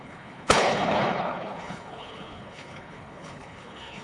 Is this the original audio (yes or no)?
no